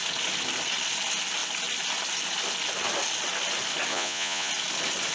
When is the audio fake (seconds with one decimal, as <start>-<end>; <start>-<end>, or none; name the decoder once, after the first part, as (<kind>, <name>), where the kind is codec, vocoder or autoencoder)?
3.9-4.5 (vocoder, Vocos)